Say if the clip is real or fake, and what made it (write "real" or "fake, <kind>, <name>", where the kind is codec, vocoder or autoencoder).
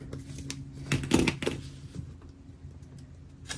real